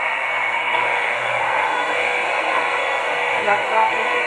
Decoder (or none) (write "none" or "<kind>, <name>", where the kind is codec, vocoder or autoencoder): codec, SNAC